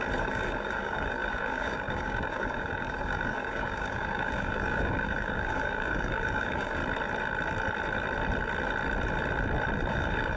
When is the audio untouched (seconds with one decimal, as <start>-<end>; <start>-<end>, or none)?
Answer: 6.8-9.9